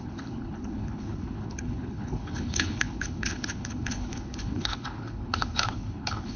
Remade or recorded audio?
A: remade